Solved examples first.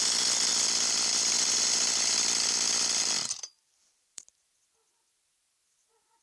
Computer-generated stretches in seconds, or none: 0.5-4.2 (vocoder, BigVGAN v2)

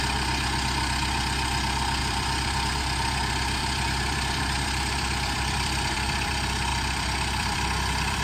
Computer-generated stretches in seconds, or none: 2.0-2.8 (vocoder, BigVGAN v2); 3.6-6.3; 6.7-8.2

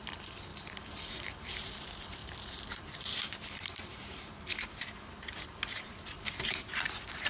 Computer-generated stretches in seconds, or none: 0.0-7.3 (vocoder, BigVGAN v2)

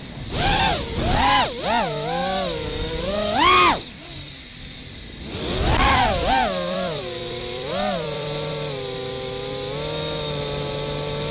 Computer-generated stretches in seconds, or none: 4.1-8.5 (vocoder, BigVGAN v2)

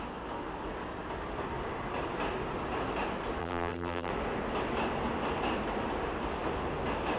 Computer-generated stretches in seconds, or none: 3.4-4.1 (vocoder, BigVGAN v2)

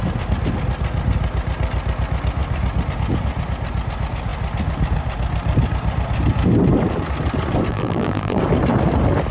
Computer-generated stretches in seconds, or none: 7.7-8.4 (vocoder, BigVGAN v2)

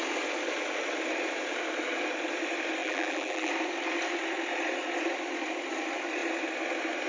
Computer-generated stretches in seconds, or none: 2.8-3.5 (vocoder, BigVGAN v2)